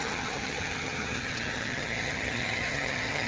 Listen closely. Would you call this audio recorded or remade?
remade